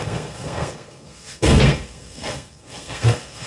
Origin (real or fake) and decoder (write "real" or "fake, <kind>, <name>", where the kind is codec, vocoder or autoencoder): fake, codec, SNAC